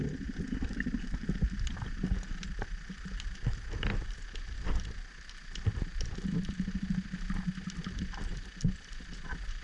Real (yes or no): yes